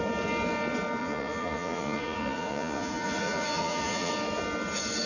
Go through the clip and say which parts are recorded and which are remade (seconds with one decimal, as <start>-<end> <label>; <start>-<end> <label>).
0.0-1.0 recorded; 1.0-4.1 remade; 4.1-5.1 recorded